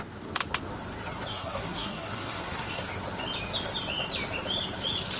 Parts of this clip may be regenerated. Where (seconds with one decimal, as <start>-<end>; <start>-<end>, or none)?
1.3-2.8